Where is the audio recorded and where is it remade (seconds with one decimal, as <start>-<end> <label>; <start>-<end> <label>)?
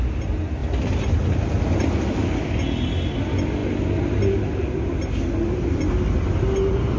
0.0-7.0 recorded